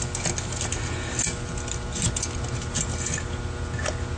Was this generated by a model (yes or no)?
no